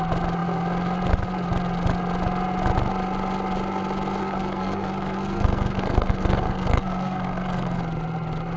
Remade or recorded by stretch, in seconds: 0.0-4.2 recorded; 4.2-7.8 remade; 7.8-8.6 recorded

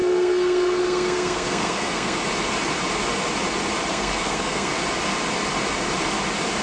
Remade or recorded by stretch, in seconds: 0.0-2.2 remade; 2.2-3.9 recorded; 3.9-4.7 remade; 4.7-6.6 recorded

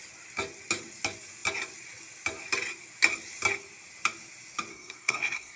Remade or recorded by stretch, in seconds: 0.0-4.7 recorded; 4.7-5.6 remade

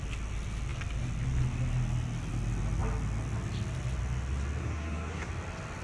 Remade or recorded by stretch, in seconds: 0.0-4.6 recorded; 4.6-5.3 remade; 5.3-5.8 recorded

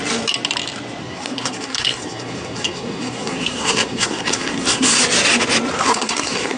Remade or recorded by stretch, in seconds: 0.0-1.0 recorded; 1.0-5.0 remade; 5.0-5.7 recorded; 5.7-6.6 remade